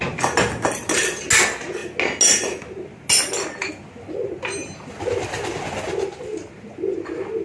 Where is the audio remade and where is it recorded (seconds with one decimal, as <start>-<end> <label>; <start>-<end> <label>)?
0.0-7.4 recorded